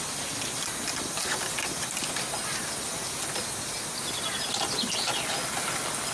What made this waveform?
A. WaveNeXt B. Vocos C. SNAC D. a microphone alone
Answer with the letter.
D